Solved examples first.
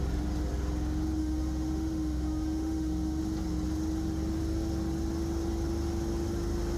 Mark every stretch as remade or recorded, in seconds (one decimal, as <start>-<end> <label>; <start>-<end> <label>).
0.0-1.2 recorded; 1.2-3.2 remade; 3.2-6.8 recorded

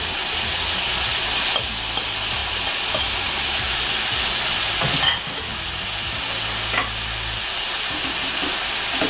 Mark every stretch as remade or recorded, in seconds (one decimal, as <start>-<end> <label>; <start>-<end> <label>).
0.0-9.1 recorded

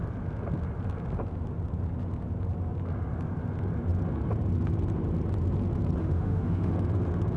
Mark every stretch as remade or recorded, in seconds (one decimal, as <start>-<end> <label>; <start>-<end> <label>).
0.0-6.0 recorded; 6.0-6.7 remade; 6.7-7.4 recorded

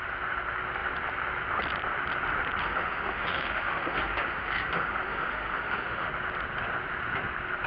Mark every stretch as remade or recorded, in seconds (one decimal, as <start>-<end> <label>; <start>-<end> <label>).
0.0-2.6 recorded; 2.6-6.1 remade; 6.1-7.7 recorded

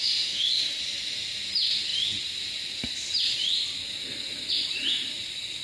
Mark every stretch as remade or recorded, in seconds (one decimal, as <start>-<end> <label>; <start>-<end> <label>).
0.0-0.8 remade; 0.8-5.6 recorded